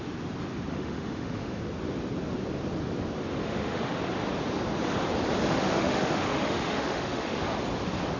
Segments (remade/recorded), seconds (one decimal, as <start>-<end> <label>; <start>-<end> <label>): 0.0-0.7 recorded; 0.7-1.6 remade; 1.6-3.4 recorded; 3.4-3.9 remade; 3.9-5.4 recorded; 5.4-7.4 remade; 7.4-8.2 recorded